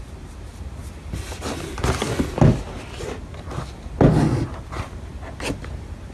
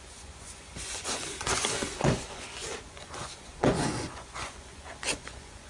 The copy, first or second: second